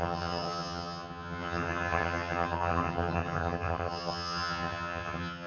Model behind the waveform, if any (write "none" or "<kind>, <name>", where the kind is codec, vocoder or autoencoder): vocoder, HiFi-GAN